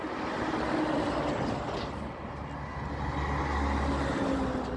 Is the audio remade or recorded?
recorded